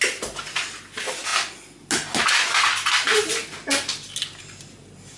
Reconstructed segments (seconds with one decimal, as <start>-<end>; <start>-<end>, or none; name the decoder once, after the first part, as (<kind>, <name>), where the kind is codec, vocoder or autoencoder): none